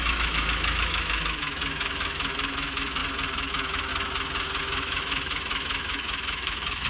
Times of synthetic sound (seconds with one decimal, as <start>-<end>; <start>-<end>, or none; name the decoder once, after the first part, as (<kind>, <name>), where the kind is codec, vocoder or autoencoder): 0.0-3.0 (autoencoder, DAC-VAE); 3.5-3.9; 4.6-6.9